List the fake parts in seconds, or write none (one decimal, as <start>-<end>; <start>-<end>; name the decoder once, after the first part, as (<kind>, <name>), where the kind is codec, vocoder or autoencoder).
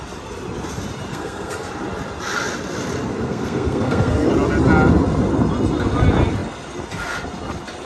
1.1-1.7 (codec, SNAC); 3.1-4.3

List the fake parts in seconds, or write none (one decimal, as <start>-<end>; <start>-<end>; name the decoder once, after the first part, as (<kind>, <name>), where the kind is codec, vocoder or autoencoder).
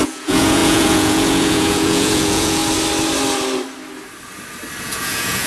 0.0-2.6 (vocoder, Vocos); 4.8-5.5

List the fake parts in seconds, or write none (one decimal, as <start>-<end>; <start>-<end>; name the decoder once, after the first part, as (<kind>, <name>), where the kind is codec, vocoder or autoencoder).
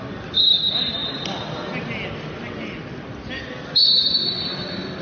none